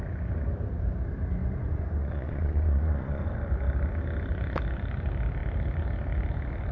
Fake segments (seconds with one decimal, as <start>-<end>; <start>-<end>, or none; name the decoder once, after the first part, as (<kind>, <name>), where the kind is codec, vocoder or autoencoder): 1.4-3.3 (vocoder, Vocos)